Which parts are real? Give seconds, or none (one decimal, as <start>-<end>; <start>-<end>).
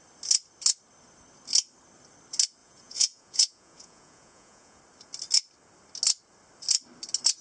0.0-2.6; 4.8-7.4